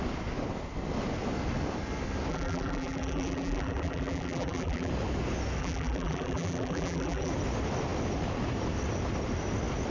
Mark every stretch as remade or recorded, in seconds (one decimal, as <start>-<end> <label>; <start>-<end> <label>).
0.0-2.3 recorded; 2.3-4.9 remade; 4.9-5.6 recorded; 5.6-7.3 remade; 7.3-9.9 recorded